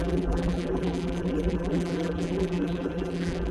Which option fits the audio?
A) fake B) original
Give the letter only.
A